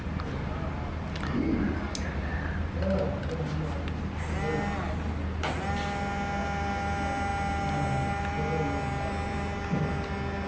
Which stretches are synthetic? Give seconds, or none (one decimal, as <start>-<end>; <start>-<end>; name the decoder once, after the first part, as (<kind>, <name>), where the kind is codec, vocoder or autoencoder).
none